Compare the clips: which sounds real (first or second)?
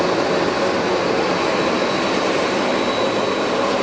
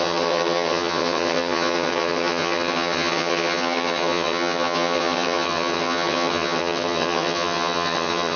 first